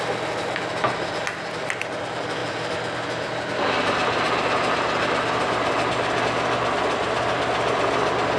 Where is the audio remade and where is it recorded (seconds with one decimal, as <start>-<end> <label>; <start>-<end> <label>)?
0.0-8.4 recorded